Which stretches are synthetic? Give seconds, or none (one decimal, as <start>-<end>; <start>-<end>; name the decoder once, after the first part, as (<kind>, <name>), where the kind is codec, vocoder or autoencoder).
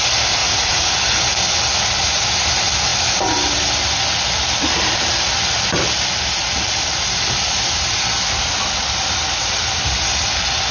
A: 0.4-0.9 (vocoder, Vocos)